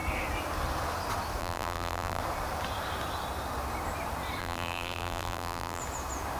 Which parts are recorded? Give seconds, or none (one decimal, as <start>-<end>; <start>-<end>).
0.0-1.4; 2.2-4.4; 5.8-6.4

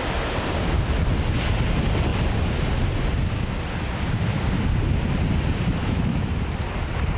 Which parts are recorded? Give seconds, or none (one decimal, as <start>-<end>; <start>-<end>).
0.0-5.8; 6.4-7.2